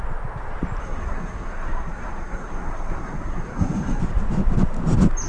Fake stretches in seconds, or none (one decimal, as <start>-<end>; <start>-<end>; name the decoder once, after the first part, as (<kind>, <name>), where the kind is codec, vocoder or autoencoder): 0.8-4.0 (codec, SNAC)